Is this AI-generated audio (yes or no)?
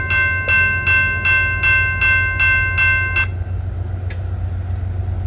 no